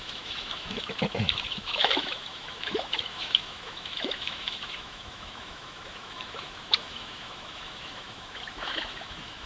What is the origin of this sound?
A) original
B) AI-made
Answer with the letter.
B